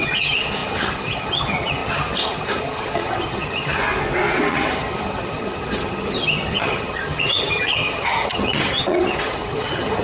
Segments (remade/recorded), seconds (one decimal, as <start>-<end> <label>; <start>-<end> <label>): 0.0-3.8 remade; 3.8-4.5 recorded; 4.5-10.0 remade